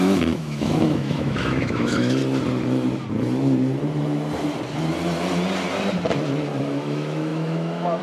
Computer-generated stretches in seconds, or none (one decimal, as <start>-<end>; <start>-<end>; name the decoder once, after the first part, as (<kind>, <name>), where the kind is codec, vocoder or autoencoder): 0.0-2.2 (autoencoder, DAC-VAE); 6.6-8.0